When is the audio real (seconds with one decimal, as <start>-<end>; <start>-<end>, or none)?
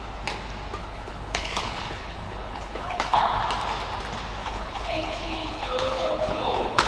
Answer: 0.0-0.8; 3.4-4.4